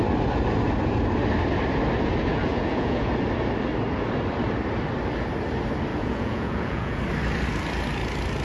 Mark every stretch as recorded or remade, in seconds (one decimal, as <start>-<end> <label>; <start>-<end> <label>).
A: 0.0-2.3 recorded; 2.3-3.1 remade; 3.1-5.9 recorded; 5.9-7.0 remade; 7.0-8.4 recorded